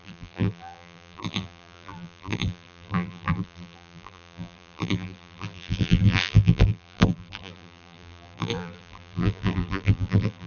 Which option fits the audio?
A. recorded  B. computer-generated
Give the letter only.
B